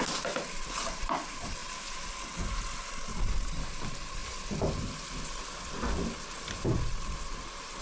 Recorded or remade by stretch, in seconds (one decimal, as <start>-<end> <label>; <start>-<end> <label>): 0.0-7.8 recorded